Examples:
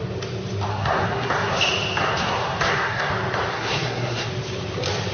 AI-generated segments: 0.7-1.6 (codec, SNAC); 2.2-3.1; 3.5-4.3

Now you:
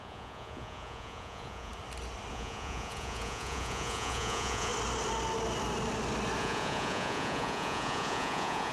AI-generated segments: 0.0-1.7 (vocoder, Vocos); 2.3-4.7; 6.4-8.7

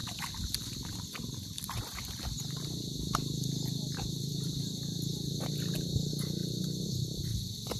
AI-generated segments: 0.0-4.6 (vocoder, BigVGAN v2)

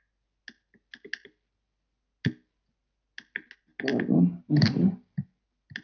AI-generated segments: none

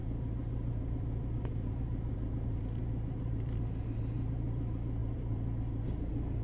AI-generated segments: 0.0-6.4 (vocoder, BigVGAN v2)

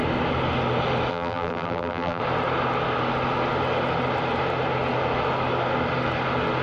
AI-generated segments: 1.1-2.2 (vocoder, BigVGAN v2)

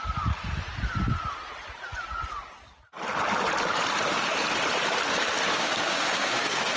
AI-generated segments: 5.5-6.8 (codec, DAC)

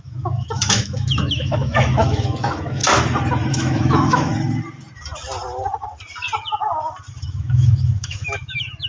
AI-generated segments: 0.0-2.8 (autoencoder, DAC-VAE); 3.5-4.3; 7.2-8.9